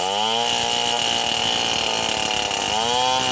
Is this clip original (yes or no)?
yes